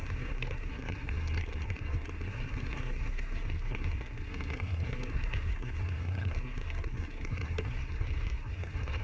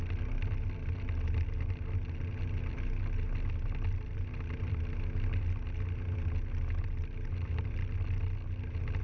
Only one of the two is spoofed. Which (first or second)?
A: first